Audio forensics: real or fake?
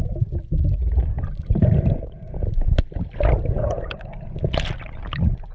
real